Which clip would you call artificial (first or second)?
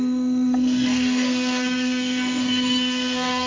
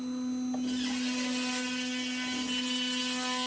first